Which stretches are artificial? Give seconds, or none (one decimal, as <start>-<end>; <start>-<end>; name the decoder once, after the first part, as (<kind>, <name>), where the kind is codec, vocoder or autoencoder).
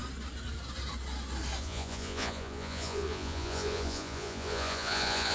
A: 1.6-5.3 (vocoder, Vocos)